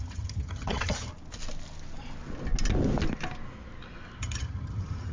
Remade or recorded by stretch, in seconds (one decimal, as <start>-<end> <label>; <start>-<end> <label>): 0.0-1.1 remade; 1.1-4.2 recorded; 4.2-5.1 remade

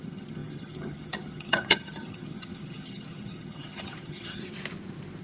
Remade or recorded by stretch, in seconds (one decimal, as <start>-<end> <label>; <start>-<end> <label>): 0.0-4.4 remade; 4.4-5.2 recorded

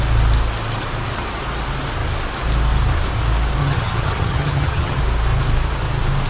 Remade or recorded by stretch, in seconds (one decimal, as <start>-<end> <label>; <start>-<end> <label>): 0.0-3.6 recorded; 3.6-5.0 remade; 5.0-6.3 recorded

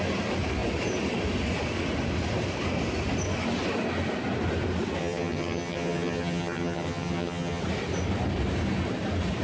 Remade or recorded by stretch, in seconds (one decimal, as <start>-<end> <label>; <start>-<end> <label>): 0.0-5.0 recorded; 5.0-7.6 remade; 7.6-9.4 recorded

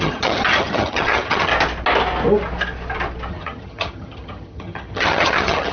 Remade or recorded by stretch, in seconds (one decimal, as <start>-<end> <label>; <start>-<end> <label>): 0.0-1.5 remade; 1.5-3.3 recorded; 3.3-5.7 remade

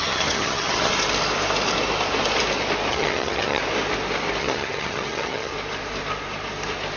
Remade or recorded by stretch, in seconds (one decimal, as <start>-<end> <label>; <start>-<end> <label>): 0.0-0.9 remade; 0.9-2.9 recorded; 2.9-3.6 remade; 3.6-4.4 recorded; 4.4-5.5 remade; 5.5-7.0 recorded

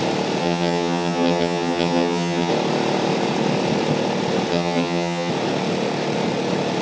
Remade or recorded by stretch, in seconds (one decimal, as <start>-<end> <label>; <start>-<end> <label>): 0.0-0.4 recorded; 0.4-2.5 remade; 2.5-4.5 recorded; 4.5-5.3 remade; 5.3-6.8 recorded